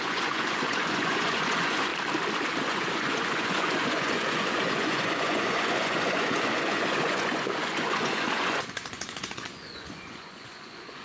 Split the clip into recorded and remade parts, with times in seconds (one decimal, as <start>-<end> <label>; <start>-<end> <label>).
0.0-1.9 remade; 1.9-2.6 recorded; 2.6-11.0 remade